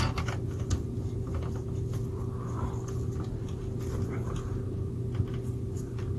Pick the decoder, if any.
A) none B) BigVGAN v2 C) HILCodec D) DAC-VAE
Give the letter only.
A